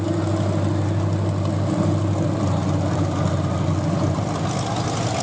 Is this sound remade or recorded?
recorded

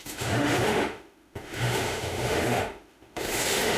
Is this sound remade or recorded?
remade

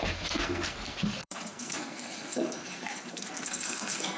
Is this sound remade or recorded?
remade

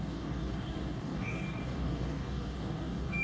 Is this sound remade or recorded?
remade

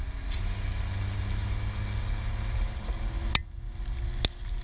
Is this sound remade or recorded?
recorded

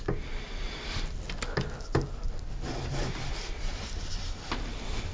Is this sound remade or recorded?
recorded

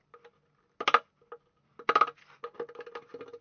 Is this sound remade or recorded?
recorded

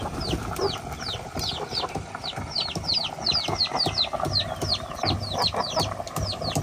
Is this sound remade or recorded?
recorded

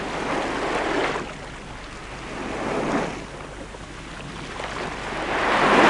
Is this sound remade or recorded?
recorded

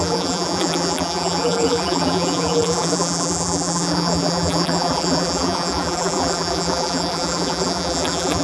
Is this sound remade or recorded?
remade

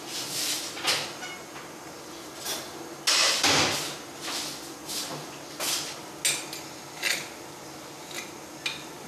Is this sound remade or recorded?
recorded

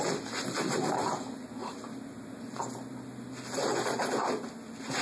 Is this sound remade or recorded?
recorded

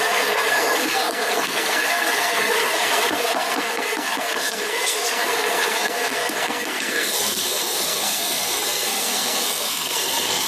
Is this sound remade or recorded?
remade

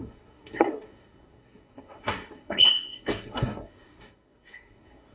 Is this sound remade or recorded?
remade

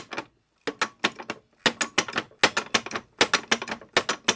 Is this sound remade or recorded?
recorded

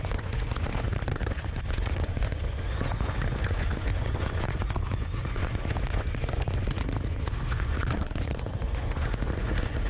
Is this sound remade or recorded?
remade